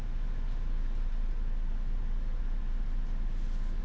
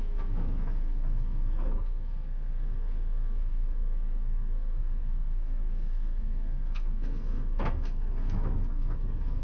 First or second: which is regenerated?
second